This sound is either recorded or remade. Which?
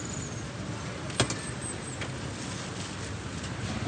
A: recorded